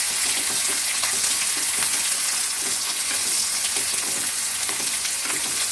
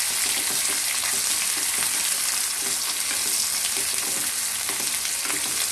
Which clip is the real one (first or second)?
second